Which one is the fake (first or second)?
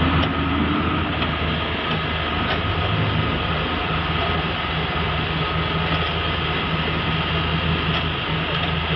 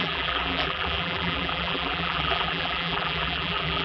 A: second